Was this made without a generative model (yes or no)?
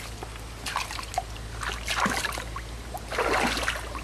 yes